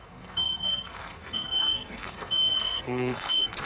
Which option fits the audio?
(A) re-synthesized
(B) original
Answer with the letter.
A